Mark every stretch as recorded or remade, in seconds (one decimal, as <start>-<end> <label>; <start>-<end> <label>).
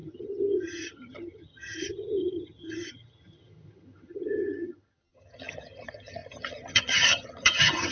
0.0-7.9 remade